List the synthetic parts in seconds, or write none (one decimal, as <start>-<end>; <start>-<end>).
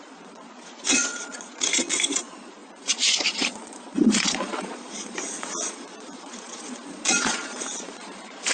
0.0-8.5